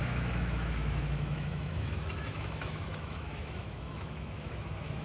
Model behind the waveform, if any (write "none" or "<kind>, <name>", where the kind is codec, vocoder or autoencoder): autoencoder, DAC-VAE